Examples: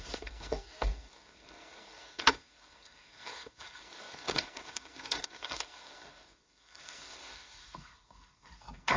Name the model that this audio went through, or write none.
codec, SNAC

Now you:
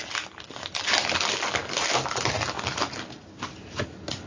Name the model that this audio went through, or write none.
none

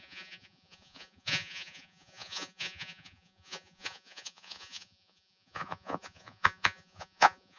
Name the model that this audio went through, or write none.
vocoder, Vocos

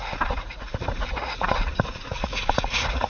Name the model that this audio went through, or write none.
vocoder, Vocos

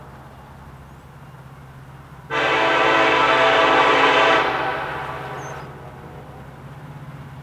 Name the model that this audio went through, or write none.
none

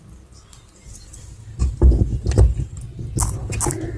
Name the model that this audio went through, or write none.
none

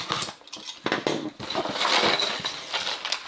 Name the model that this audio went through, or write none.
none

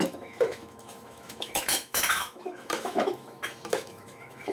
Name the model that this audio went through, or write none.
autoencoder, DAC-VAE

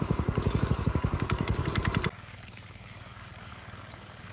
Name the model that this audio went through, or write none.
codec, DAC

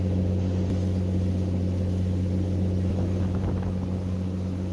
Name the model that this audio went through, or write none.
none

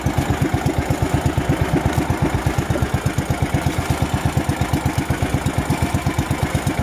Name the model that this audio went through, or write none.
none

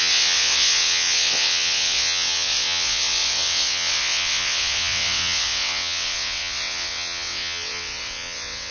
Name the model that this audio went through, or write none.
vocoder, WaveNeXt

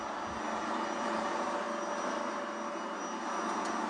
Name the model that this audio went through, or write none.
none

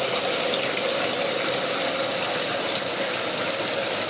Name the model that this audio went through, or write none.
none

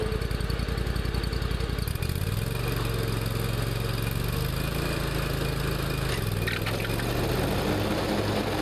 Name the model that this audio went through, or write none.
none